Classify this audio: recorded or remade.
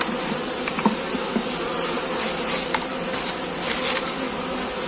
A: recorded